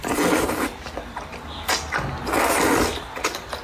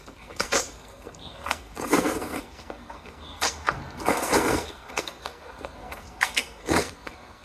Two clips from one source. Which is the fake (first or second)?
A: second